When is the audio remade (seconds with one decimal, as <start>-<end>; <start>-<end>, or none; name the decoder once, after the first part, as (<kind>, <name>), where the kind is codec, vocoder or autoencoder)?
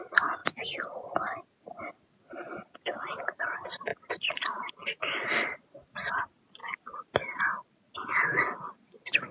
none